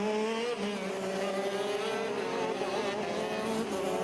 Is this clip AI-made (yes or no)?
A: no